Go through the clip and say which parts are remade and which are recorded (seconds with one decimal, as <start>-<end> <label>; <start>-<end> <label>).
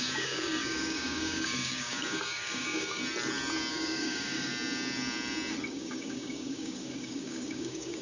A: 0.0-3.0 remade; 3.0-3.7 recorded; 3.7-4.5 remade; 4.5-5.7 recorded; 5.7-8.0 remade